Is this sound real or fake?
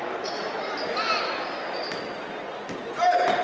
real